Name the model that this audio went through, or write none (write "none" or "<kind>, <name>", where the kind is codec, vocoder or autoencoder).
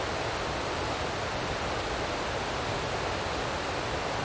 none